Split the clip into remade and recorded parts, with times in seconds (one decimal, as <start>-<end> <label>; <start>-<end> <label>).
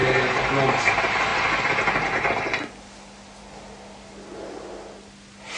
0.0-5.6 recorded